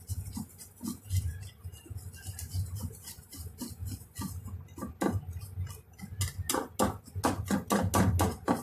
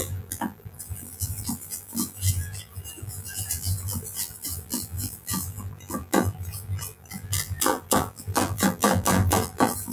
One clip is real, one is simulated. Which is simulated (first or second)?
second